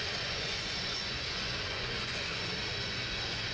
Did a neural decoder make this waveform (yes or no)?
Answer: yes